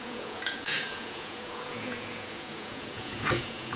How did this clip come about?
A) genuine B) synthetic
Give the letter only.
B